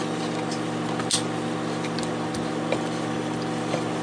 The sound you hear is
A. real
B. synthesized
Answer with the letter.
A